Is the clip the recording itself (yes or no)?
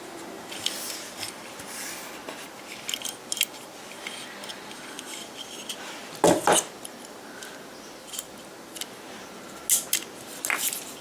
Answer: yes